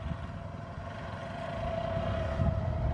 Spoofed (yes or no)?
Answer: no